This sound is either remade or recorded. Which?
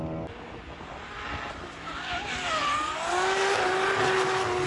recorded